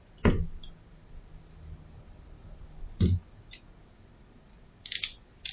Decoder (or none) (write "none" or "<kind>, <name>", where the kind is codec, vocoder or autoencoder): none